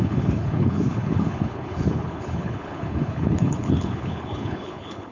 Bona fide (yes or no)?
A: no